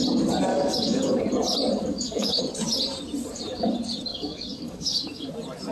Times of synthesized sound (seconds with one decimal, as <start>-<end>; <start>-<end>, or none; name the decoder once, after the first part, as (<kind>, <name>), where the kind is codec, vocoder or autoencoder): 0.5-1.2 (codec, DAC); 1.9-2.4; 4.1-5.3